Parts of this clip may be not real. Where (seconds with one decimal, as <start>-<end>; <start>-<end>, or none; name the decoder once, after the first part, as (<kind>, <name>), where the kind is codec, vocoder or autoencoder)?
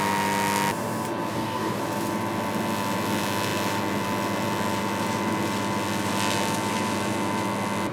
1.3-1.8 (codec, DAC)